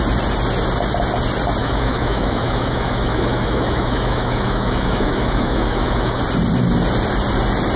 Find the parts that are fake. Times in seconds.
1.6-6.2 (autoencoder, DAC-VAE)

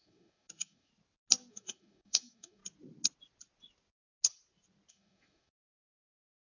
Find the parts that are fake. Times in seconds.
0.0-0.9 (autoencoder, DAC-VAE); 1.5-2.6; 4.9-6.5

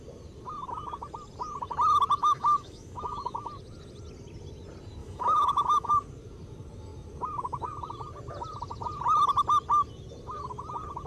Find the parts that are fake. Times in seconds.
2.2-3.5 (autoencoder, DAC-VAE); 5.0-5.9

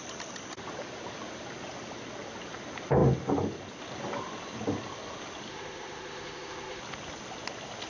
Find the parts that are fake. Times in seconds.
5.5-6.8 (autoencoder, DAC-VAE)

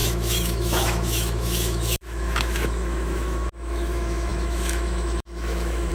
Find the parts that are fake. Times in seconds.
0.0-5.9 (autoencoder, DAC-VAE)

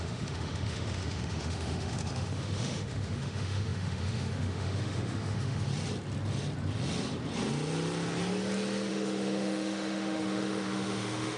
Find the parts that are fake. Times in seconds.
0.0-5.7 (autoencoder, DAC-VAE); 8.9-11.4

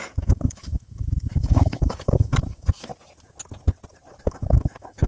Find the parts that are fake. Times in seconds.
0.0-2.9 (autoencoder, DAC-VAE); 4.2-5.1